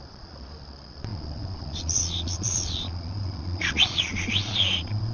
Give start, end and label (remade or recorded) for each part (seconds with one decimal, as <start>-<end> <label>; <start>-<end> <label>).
0.0-5.1 remade